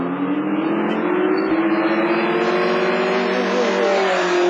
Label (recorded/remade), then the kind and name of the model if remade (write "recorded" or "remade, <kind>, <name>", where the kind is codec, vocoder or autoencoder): recorded